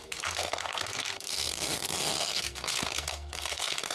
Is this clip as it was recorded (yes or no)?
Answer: no